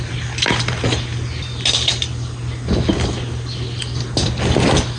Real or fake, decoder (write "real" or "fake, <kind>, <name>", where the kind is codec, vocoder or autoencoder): real